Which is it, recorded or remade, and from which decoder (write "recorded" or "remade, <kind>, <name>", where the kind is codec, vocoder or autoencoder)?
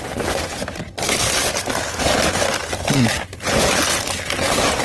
recorded